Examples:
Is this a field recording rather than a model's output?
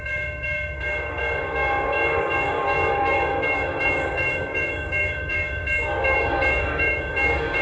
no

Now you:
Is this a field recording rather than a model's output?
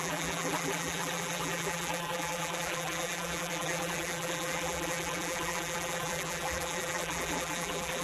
no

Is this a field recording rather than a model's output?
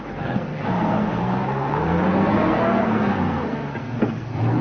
no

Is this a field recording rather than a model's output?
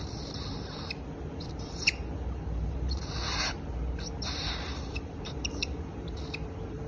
no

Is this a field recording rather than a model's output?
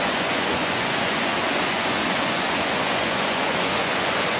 no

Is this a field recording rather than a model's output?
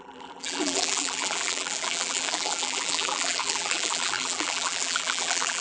no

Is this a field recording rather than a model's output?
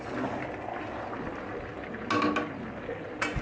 yes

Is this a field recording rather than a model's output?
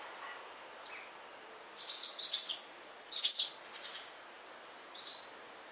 yes